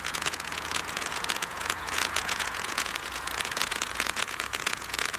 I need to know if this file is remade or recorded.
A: remade